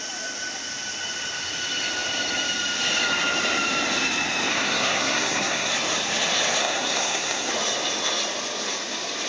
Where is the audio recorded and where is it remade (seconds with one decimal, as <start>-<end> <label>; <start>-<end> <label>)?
0.0-4.5 recorded; 4.5-5.7 remade; 5.7-6.6 recorded; 6.6-7.5 remade; 7.5-9.3 recorded